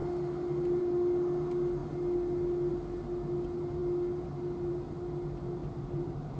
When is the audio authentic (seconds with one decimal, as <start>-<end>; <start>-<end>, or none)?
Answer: 0.0-5.6